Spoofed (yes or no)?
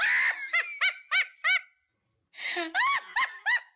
no